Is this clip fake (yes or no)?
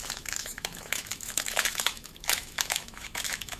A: yes